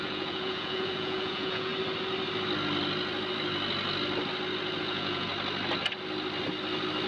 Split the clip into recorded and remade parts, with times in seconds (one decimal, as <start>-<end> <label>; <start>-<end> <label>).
0.0-1.7 remade; 1.7-4.8 recorded; 4.8-5.3 remade; 5.3-7.1 recorded